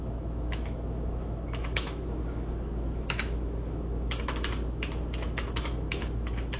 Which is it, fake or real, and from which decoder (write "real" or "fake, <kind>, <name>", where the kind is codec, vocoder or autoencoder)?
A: fake, autoencoder, DAC-VAE